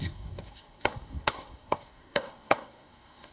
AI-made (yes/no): yes